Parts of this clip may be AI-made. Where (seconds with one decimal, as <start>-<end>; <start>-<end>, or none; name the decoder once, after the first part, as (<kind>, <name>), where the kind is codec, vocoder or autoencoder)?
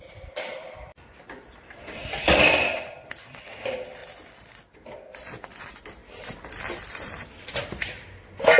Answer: 0.0-4.0 (vocoder, BigVGAN v2); 5.6-6.0; 6.8-8.6